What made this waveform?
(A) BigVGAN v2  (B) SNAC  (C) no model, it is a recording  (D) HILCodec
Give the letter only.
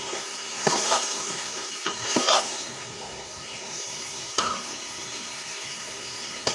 B